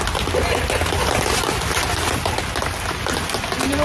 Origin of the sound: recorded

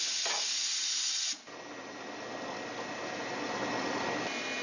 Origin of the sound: recorded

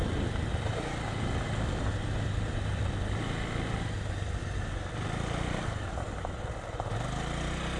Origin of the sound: recorded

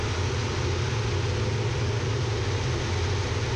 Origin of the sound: recorded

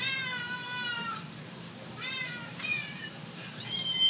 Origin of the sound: recorded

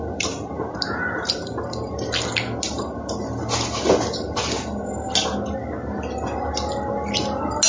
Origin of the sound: recorded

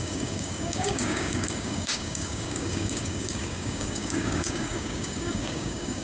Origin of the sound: remade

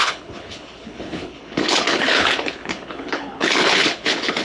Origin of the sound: remade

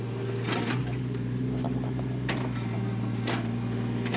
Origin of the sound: recorded